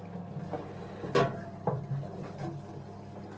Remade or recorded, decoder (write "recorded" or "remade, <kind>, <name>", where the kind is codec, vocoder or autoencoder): recorded